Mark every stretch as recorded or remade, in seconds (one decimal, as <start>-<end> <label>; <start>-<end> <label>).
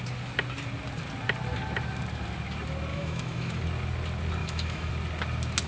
0.0-2.9 recorded; 2.9-3.6 remade; 3.6-4.4 recorded; 4.4-4.9 remade; 4.9-5.7 recorded